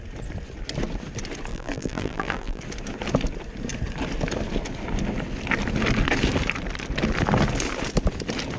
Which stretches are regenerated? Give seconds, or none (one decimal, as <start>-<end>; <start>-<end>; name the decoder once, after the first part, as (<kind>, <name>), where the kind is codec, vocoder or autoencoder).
1.5-2.6 (vocoder, BigVGAN v2)